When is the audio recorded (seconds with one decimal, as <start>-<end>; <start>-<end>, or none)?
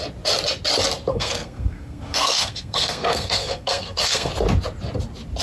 0.0-1.1; 4.3-5.4